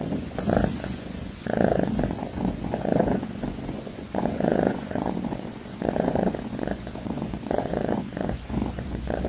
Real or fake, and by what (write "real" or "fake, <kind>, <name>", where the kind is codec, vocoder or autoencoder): fake, vocoder, Vocos